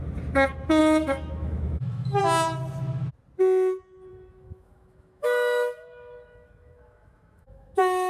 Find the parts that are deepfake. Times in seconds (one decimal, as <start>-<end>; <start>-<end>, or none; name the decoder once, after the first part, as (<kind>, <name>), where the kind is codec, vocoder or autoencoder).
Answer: 0.8-2.2 (autoencoder, DAC-VAE); 4.1-8.1